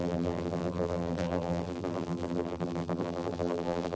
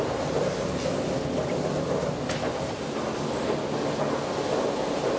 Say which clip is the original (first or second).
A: second